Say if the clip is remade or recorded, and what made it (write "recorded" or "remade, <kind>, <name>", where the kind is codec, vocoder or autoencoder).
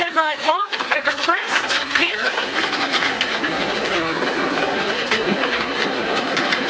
remade, codec, SNAC